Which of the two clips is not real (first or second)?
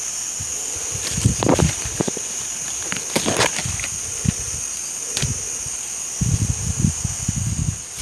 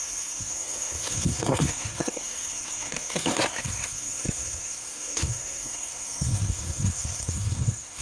second